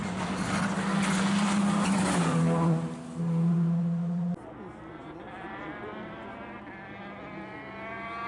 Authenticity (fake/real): real